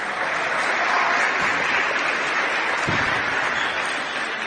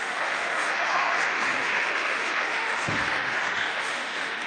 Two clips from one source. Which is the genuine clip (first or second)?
first